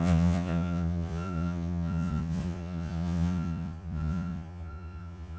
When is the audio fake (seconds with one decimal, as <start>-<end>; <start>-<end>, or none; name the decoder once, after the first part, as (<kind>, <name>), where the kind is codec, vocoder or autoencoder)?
0.0-5.4 (vocoder, Vocos)